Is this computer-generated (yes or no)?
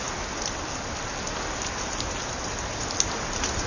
no